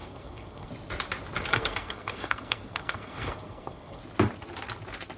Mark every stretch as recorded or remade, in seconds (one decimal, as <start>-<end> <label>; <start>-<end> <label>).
0.0-0.7 remade; 0.7-1.5 recorded; 1.5-4.0 remade; 4.0-5.2 recorded